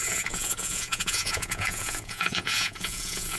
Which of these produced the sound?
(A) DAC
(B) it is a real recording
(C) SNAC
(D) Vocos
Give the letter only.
D